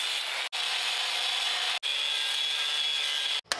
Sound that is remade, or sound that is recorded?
recorded